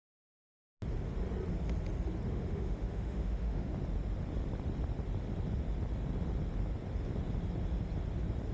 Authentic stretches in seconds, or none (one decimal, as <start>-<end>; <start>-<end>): 0.4-2.3; 3.7-8.5